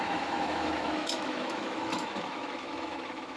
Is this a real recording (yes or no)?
no